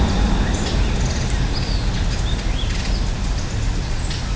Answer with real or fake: real